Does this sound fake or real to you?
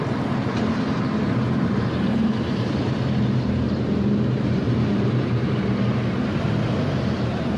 fake